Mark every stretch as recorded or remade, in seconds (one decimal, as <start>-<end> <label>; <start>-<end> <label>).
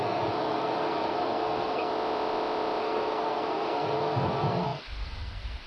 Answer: 0.0-1.9 remade; 1.9-2.8 recorded; 2.8-5.7 remade